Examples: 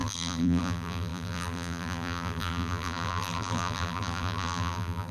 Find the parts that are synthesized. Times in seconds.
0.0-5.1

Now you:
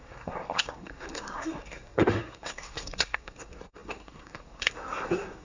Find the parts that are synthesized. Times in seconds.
0.0-5.4

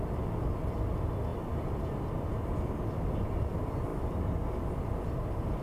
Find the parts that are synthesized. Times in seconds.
none

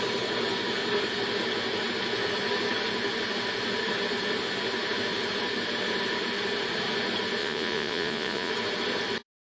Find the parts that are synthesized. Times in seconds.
7.4-8.5

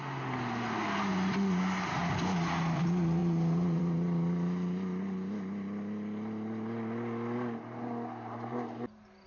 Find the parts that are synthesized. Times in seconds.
3.2-3.8

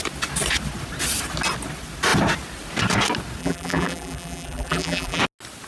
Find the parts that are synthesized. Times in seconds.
3.4-5.2

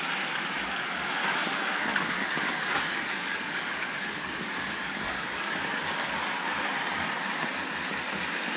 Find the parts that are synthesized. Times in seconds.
1.8-5.6

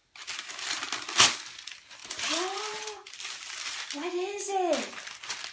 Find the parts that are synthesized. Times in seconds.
0.0-0.8; 2.0-3.1